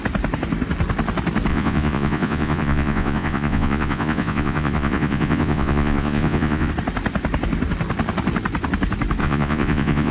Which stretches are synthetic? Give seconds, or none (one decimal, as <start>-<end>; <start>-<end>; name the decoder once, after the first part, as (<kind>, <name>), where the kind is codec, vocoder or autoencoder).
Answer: 1.5-6.7 (vocoder, Vocos); 9.2-10.1